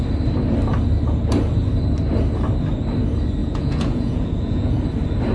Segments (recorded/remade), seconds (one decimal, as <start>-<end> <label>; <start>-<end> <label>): 0.0-3.4 recorded; 3.4-4.8 remade; 4.8-5.3 recorded